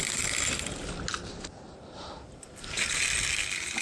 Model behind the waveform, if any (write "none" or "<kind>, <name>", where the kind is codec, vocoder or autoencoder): none